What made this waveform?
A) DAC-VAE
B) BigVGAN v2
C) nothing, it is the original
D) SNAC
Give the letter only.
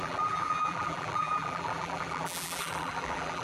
B